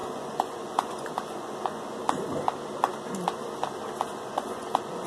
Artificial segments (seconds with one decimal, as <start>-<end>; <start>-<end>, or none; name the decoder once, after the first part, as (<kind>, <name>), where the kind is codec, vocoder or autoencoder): 0.0-2.0 (vocoder, Vocos); 4.1-5.1